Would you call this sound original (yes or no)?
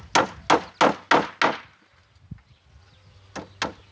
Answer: yes